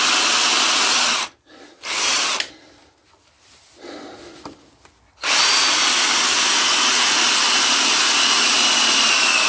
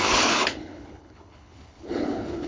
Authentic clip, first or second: first